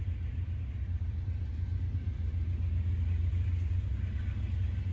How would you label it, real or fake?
real